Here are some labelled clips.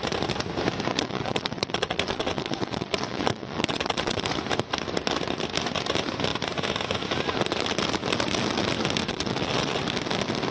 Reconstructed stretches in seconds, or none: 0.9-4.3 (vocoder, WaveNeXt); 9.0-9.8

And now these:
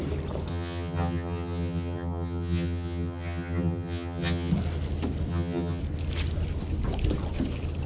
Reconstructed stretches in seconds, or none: 0.5-4.5 (vocoder, HiFi-GAN); 5.3-5.8

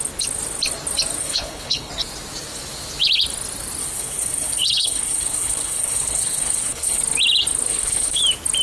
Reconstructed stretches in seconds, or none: 1.2-1.9 (codec, HILCodec); 3.8-7.0; 7.7-8.2

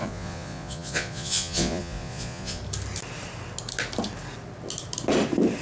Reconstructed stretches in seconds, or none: 0.0-2.6 (vocoder, Vocos)

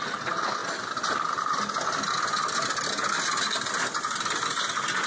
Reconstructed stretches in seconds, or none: none

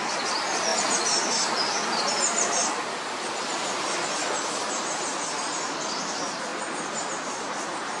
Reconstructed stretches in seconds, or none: none

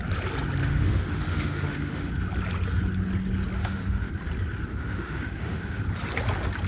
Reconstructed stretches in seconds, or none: 0.6-2.1 (autoencoder, DAC-VAE); 3.6-4.1; 4.7-5.8

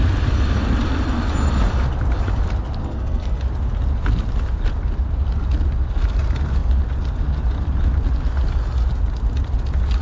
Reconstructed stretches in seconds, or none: 2.8-3.4 (codec, SNAC)